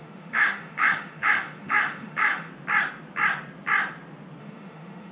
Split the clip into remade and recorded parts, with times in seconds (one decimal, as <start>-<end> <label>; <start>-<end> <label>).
0.0-2.5 remade; 2.5-4.4 recorded; 4.4-5.1 remade

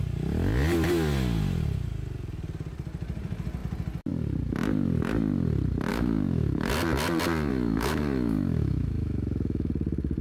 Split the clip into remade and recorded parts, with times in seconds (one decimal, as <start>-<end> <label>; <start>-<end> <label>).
0.0-5.9 recorded; 5.9-6.7 remade; 6.7-7.5 recorded; 7.5-9.7 remade; 9.7-10.2 recorded

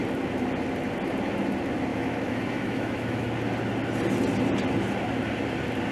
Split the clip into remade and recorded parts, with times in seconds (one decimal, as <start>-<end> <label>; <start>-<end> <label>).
0.0-1.9 recorded; 1.9-3.3 remade; 3.3-5.9 recorded

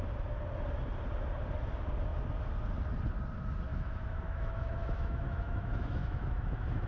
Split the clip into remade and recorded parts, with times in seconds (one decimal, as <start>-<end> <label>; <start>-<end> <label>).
0.0-3.7 recorded; 3.7-6.9 remade